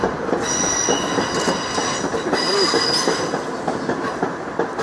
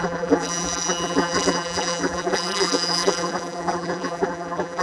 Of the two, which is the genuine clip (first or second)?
first